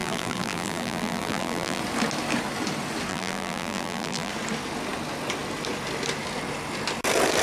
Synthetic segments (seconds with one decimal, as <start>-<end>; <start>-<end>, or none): 0.0-1.8; 3.1-4.3